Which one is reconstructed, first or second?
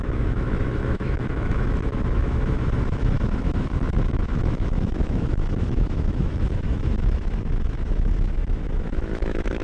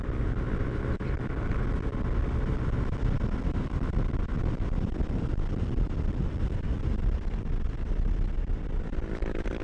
first